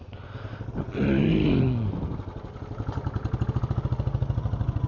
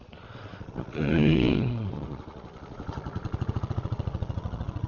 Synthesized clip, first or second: second